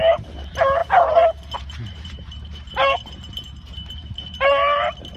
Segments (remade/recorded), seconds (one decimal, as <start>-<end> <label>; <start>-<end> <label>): 0.0-5.2 remade